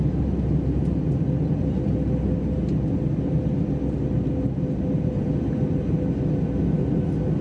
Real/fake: real